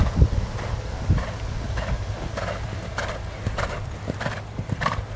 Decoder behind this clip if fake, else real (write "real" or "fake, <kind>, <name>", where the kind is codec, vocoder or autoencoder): real